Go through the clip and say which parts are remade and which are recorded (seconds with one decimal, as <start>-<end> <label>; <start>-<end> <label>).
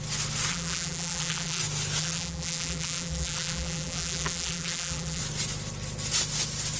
0.0-0.5 recorded; 0.5-1.6 remade; 1.6-2.0 recorded; 2.0-5.2 remade; 5.2-6.8 recorded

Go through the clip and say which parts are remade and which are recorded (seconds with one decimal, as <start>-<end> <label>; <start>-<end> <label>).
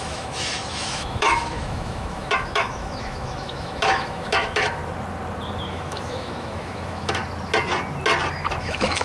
0.0-4.8 remade; 4.8-5.7 recorded; 5.7-7.2 remade; 7.2-8.6 recorded; 8.6-9.0 remade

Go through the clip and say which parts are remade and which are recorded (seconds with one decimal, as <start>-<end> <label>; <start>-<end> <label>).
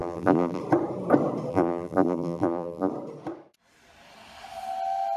0.0-0.6 remade; 0.6-1.5 recorded; 1.5-2.9 remade; 2.9-5.2 recorded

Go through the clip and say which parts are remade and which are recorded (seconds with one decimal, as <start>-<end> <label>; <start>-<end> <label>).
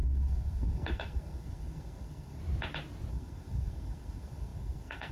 0.0-2.4 remade; 2.4-3.1 recorded; 3.1-5.1 remade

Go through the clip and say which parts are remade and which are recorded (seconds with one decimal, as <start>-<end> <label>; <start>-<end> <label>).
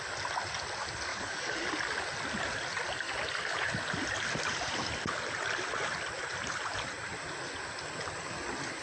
0.0-1.1 recorded; 1.1-1.7 remade; 1.7-8.8 recorded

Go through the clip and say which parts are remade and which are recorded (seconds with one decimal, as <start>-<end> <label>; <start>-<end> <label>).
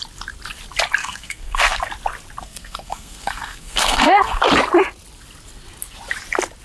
0.0-1.0 recorded; 1.0-1.8 remade; 1.8-2.4 recorded; 2.4-4.4 remade; 4.4-6.6 recorded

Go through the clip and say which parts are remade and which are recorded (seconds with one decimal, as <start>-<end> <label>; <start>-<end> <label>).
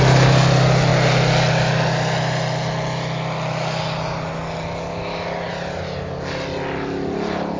0.0-7.6 recorded